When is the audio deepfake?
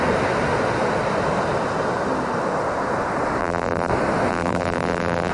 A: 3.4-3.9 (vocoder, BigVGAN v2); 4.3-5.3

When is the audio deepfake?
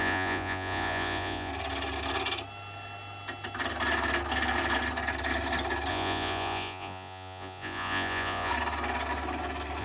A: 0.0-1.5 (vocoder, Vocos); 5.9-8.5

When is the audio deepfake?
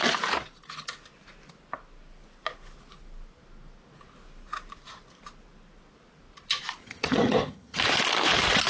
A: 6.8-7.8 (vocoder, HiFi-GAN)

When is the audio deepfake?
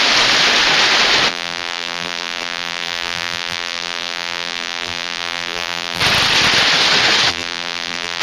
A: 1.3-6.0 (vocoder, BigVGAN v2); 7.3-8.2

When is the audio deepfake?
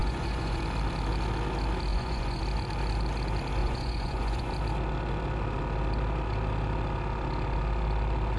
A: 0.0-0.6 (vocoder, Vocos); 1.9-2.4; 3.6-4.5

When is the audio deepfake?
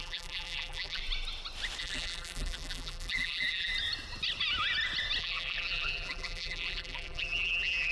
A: 0.0-1.0 (vocoder, BigVGAN v2); 1.8-3.7; 5.2-7.9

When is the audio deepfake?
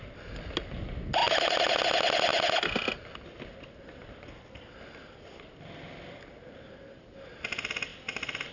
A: none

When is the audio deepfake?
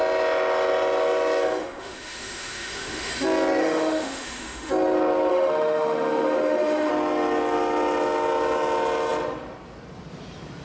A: 1.6-3.1 (autoencoder, DAC-VAE); 3.6-4.7; 5.3-6.9